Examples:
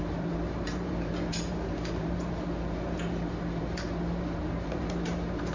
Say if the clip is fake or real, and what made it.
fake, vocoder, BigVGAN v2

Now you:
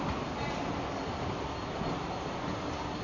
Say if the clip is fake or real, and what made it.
real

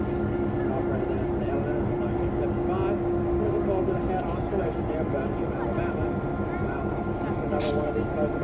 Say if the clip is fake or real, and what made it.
real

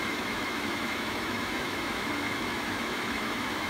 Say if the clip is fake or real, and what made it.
fake, autoencoder, DAC-VAE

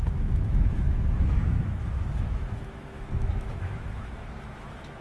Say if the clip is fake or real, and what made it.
fake, autoencoder, DAC-VAE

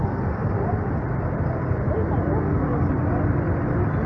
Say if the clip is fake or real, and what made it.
real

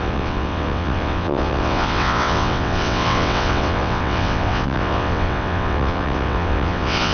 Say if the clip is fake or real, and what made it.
fake, vocoder, WaveNeXt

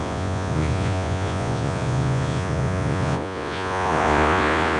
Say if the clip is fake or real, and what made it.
fake, vocoder, Vocos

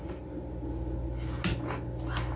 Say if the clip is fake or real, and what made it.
real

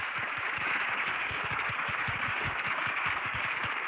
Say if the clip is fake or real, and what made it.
fake, codec, DAC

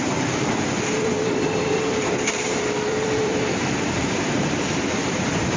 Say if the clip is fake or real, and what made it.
fake, vocoder, BigVGAN v2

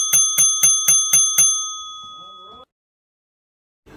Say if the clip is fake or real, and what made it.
real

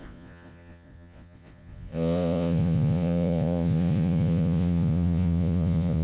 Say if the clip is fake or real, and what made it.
fake, vocoder, Vocos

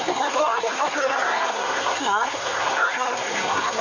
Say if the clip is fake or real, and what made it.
fake, codec, SNAC